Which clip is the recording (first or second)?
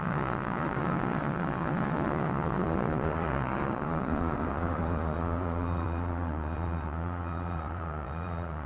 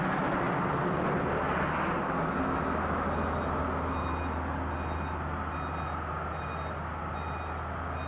second